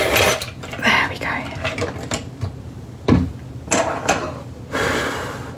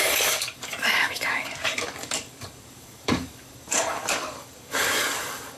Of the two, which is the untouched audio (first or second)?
first